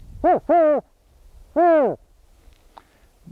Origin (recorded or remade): recorded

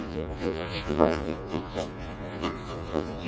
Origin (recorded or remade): remade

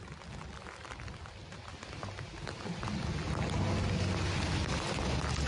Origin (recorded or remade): recorded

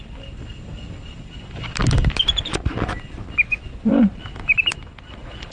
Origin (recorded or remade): remade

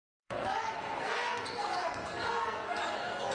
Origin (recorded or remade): remade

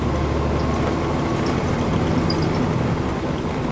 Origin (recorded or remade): recorded